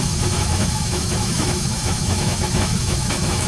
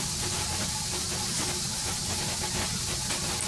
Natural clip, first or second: second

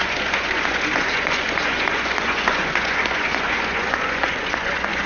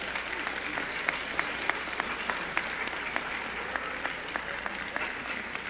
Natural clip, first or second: second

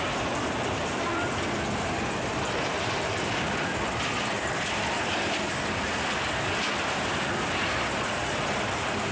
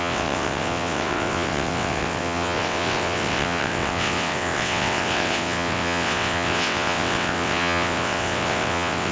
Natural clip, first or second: first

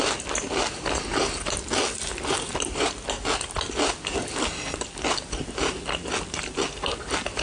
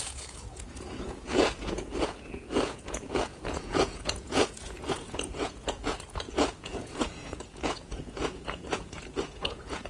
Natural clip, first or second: first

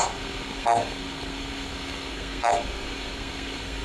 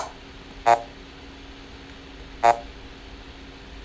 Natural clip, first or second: second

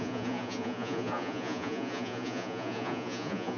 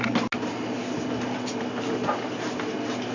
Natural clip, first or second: second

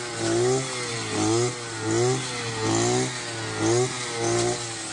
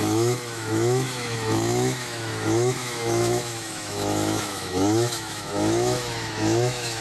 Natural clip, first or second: first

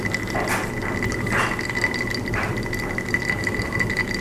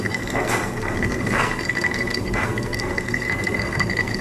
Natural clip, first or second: first